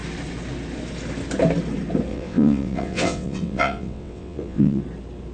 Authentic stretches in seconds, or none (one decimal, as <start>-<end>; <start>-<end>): 0.0-2.1; 4.8-5.3